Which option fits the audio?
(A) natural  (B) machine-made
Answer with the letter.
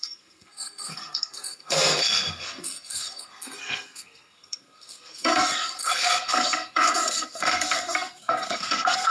B